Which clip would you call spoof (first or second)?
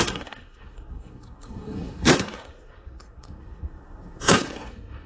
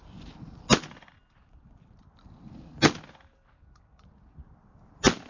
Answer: first